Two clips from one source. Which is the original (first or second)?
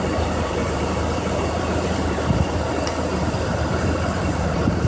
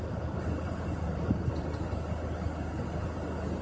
second